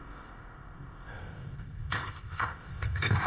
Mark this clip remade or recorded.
remade